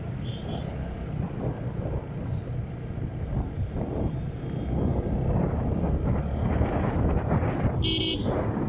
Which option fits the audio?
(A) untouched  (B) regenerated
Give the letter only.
A